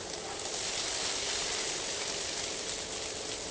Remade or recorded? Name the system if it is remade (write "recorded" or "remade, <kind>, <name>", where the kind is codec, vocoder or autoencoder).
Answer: recorded